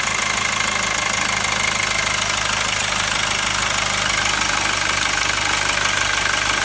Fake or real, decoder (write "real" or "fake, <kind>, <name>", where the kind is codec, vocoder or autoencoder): real